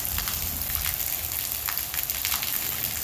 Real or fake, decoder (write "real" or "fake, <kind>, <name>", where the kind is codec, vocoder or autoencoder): real